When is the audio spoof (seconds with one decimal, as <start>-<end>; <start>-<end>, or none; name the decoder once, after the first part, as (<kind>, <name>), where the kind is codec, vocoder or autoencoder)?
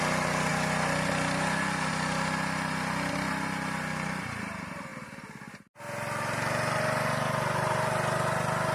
none